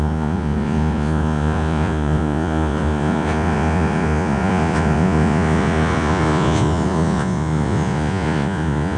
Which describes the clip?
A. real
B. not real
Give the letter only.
B